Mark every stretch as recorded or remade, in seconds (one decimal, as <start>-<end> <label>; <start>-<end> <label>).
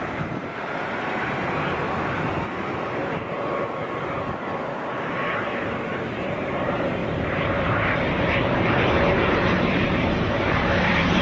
0.0-3.0 remade; 3.0-4.9 recorded; 4.9-11.2 remade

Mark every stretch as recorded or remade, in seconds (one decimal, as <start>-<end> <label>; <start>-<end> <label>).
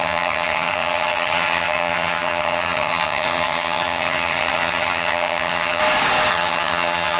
0.0-5.8 remade; 5.8-6.3 recorded; 6.3-7.2 remade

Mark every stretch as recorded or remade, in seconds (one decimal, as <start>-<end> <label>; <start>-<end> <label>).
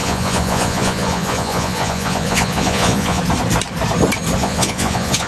0.0-3.2 remade; 3.2-4.4 recorded; 4.4-5.3 remade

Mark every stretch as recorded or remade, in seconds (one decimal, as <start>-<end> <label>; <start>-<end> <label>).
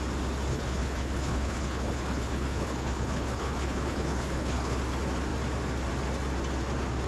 0.0-0.5 recorded; 0.5-4.8 remade; 4.8-7.1 recorded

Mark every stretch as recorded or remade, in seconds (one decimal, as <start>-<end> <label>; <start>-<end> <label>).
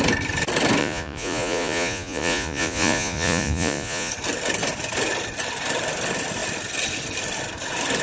0.0-0.8 recorded; 0.8-4.1 remade; 4.1-8.0 recorded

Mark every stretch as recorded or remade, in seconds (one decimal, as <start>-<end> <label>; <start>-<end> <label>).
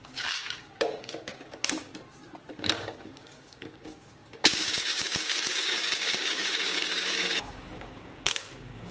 0.0-1.9 remade; 1.9-2.5 recorded; 2.5-8.9 remade